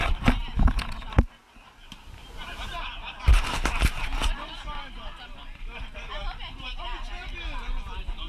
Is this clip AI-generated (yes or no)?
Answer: no